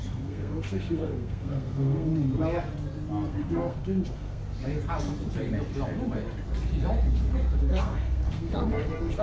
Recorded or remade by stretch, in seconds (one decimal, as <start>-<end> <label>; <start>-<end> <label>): 0.0-2.1 remade; 2.1-3.3 recorded; 3.3-4.4 remade; 4.4-7.6 recorded; 7.6-9.2 remade